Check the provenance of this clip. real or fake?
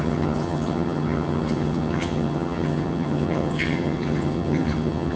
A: fake